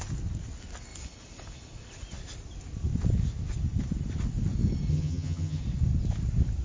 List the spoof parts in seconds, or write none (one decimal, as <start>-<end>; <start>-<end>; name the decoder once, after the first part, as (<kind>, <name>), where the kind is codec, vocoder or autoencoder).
4.9-5.6 (vocoder, HiFi-GAN)